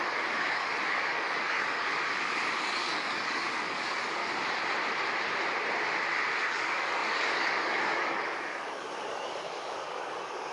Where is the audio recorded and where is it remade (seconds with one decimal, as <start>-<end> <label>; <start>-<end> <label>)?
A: 0.0-1.9 remade; 1.9-2.6 recorded; 2.6-4.2 remade; 4.2-6.5 recorded; 6.5-10.5 remade